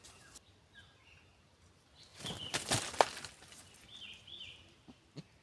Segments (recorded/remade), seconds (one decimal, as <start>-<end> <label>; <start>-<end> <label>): 0.0-5.4 recorded